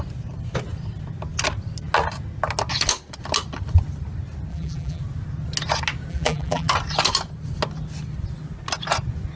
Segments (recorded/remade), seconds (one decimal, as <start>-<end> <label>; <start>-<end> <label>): 0.0-4.5 recorded; 4.5-5.0 remade; 5.0-6.1 recorded; 6.1-6.7 remade; 6.7-9.4 recorded

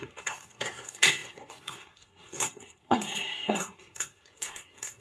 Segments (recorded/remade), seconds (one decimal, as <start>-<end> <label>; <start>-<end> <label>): 0.0-5.0 remade

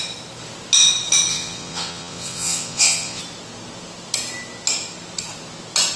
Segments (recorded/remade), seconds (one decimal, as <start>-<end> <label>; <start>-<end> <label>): 0.0-1.3 recorded; 1.3-3.2 remade; 3.2-6.0 recorded

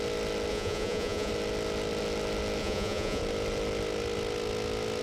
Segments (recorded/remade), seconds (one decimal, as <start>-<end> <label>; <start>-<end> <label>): 0.0-0.5 recorded; 0.5-1.3 remade; 1.3-2.6 recorded; 2.6-3.2 remade; 3.2-5.0 recorded

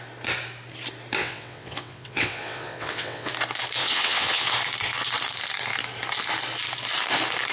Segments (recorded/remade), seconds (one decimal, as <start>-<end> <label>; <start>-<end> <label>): 0.0-1.2 recorded; 1.2-3.3 remade; 3.3-3.8 recorded; 3.8-4.5 remade; 4.5-7.5 recorded

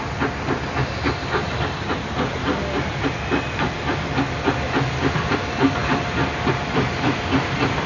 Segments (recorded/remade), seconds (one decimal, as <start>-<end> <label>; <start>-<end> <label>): 0.0-7.9 recorded

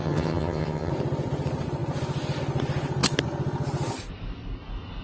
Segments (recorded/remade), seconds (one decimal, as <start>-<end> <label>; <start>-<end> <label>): 0.0-0.9 remade; 0.9-5.0 recorded

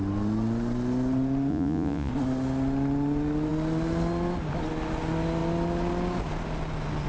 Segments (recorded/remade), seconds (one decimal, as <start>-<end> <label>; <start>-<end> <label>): 0.0-1.5 recorded; 1.5-2.1 remade; 2.1-7.1 recorded